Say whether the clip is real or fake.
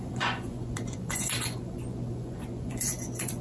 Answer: fake